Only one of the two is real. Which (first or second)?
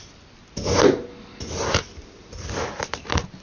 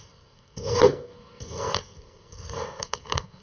first